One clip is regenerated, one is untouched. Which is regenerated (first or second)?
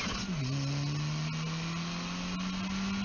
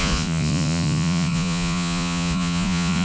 second